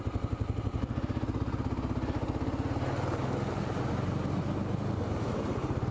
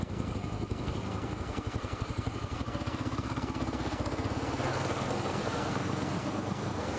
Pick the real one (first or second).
first